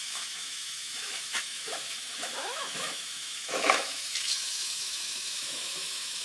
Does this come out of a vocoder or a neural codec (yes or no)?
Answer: yes